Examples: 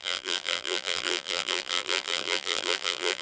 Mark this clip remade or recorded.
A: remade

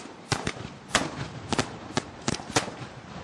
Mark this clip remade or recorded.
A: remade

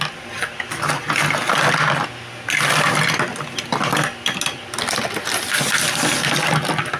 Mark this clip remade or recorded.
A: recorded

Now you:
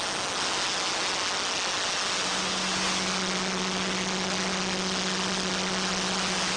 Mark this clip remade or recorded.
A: recorded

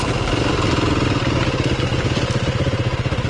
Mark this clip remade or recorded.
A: recorded